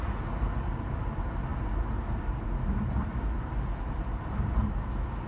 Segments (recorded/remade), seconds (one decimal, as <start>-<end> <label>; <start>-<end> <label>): 0.0-5.3 recorded